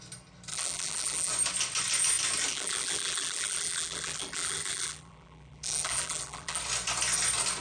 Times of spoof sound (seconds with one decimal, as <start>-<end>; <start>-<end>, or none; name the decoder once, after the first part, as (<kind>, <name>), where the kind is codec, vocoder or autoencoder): 0.5-1.3 (vocoder, BigVGAN v2); 2.5-6.6

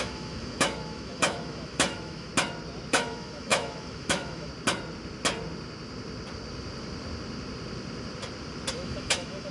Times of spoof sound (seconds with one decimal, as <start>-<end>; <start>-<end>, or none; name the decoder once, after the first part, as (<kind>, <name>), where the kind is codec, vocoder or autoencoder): 0.0-2.3 (autoencoder, DAC-VAE); 2.9-4.5; 8.7-9.5

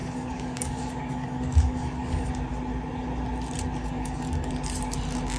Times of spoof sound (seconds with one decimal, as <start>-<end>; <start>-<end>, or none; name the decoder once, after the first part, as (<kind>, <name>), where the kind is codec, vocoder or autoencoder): 0.0-2.3 (codec, DAC); 3.8-4.5

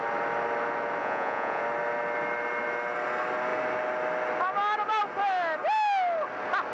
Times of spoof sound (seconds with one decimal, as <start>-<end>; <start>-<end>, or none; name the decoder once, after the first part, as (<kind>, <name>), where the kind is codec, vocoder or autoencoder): 1.0-1.6 (vocoder, Vocos)

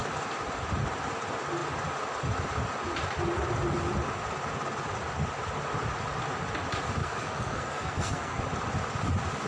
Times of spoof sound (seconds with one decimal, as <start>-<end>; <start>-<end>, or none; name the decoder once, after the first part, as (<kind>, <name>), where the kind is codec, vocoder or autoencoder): 7.0-8.4 (codec, SNAC)